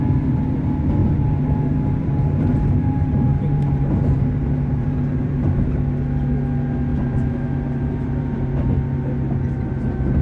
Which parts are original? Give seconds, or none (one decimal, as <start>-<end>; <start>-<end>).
0.0-1.0; 5.8-6.9; 8.7-10.2